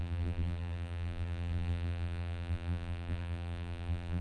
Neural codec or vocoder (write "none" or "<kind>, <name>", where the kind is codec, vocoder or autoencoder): vocoder, BigVGAN v2